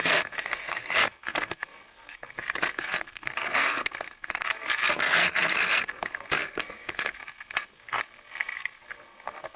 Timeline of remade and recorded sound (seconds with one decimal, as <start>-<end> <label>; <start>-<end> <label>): 0.0-9.6 remade